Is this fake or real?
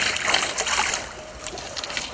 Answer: real